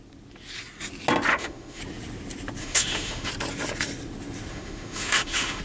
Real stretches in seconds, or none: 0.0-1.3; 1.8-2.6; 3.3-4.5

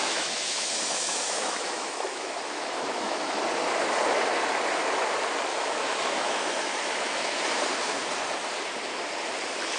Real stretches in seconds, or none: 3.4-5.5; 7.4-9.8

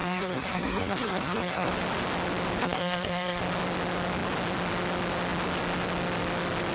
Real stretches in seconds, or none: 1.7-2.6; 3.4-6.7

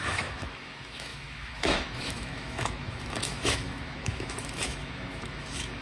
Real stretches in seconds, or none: none

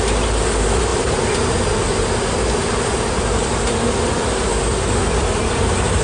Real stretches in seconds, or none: 0.0-6.0

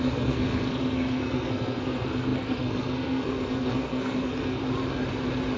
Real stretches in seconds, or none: 4.6-5.6